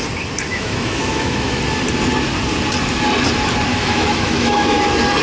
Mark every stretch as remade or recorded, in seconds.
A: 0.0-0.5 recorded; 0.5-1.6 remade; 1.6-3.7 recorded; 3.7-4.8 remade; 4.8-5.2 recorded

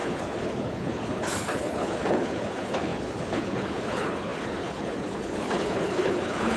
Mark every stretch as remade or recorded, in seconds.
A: 0.0-6.6 remade

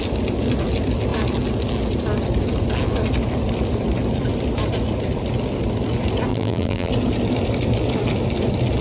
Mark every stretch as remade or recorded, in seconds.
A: 0.0-6.3 recorded; 6.3-6.9 remade; 6.9-8.8 recorded

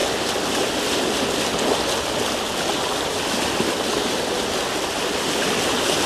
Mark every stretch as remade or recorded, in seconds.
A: 0.0-6.1 recorded